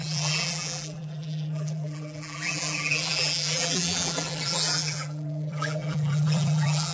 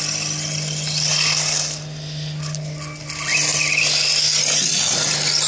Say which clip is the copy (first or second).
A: first